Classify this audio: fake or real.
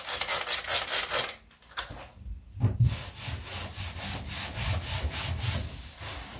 real